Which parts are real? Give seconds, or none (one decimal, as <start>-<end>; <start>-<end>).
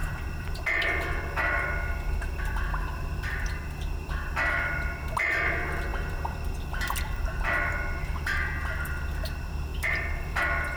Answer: 3.6-5.9; 7.7-9.7; 10.4-10.8